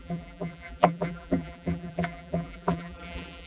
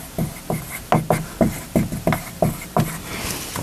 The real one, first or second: second